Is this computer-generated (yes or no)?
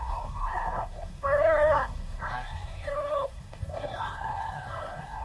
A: yes